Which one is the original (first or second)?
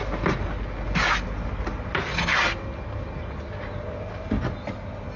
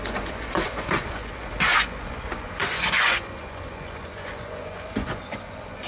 first